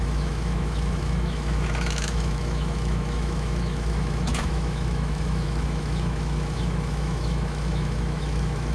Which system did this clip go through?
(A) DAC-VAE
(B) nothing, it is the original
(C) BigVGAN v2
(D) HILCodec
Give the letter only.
A